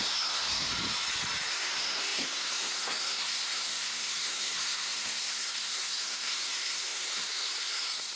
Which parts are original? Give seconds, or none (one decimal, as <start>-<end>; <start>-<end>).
0.7-1.5